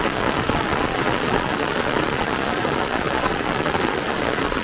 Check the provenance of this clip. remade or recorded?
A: remade